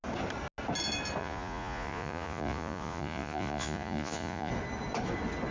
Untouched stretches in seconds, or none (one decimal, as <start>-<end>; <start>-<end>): 0.0-1.2; 4.5-5.5